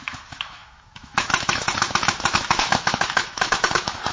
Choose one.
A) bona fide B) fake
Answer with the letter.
B